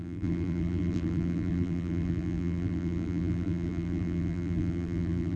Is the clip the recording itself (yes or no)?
no